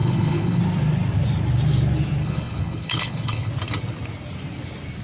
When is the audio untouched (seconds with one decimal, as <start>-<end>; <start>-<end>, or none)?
0.6-2.2; 3.5-5.0